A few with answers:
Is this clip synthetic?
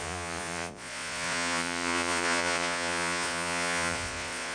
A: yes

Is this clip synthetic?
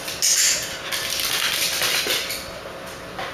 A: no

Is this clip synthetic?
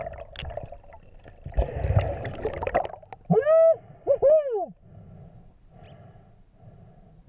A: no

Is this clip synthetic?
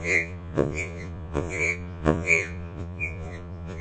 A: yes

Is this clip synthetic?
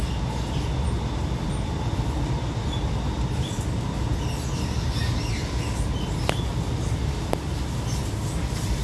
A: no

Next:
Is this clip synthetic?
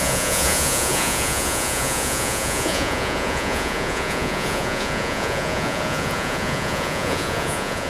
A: yes